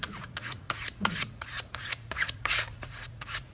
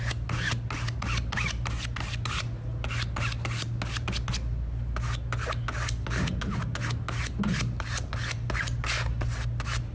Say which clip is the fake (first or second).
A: first